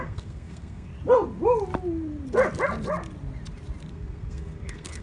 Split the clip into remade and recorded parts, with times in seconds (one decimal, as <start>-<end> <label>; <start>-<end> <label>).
0.0-0.9 remade; 0.9-3.9 recorded; 3.9-5.0 remade